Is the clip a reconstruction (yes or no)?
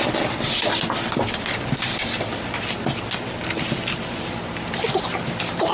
no